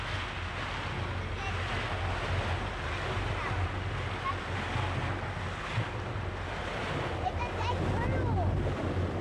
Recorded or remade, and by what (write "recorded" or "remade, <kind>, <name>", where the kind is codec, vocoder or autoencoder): recorded